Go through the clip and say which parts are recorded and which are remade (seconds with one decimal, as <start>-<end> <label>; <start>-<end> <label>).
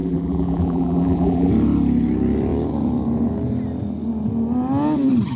0.0-1.5 remade; 1.5-5.4 recorded